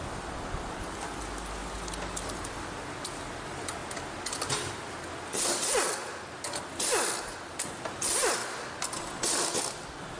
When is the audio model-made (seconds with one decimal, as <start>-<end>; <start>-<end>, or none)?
none